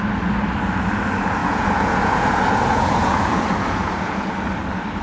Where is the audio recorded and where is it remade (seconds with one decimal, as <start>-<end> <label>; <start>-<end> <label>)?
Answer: 0.0-1.4 recorded; 1.4-4.3 remade; 4.3-5.0 recorded